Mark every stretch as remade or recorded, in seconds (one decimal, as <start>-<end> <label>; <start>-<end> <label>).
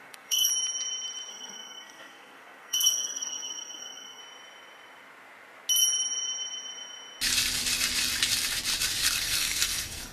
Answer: 0.0-0.5 remade; 0.5-1.3 recorded; 1.3-4.2 remade; 4.2-9.2 recorded; 9.2-10.1 remade